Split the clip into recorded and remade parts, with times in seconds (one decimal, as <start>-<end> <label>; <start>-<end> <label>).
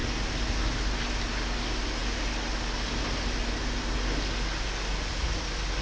0.0-5.8 recorded